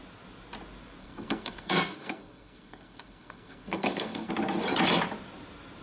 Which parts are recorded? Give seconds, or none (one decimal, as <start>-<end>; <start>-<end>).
0.0-1.0; 4.3-5.8